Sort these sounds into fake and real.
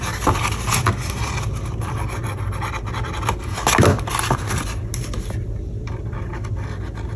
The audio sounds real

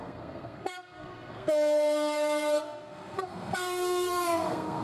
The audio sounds fake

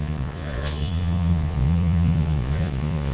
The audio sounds fake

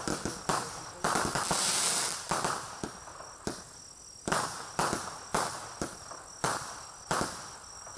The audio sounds real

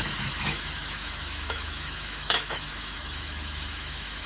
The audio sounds fake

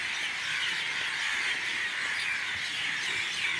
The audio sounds real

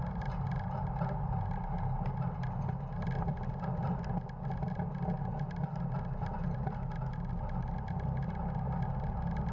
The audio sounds real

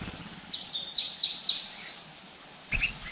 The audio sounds real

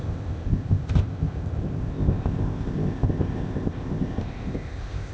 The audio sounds fake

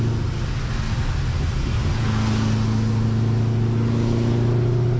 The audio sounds real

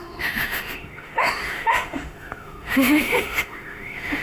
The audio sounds fake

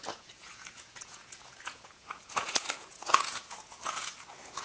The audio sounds fake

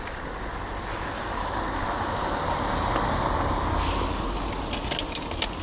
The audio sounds real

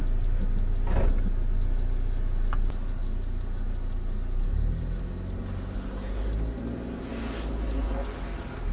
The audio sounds real